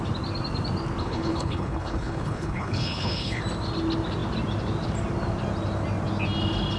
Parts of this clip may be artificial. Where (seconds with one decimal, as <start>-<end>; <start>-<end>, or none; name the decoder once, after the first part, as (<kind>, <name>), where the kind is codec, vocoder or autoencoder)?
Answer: 1.0-3.4 (codec, HILCodec)